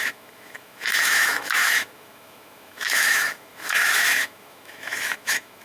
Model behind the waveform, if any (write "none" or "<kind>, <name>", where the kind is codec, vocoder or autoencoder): autoencoder, DAC-VAE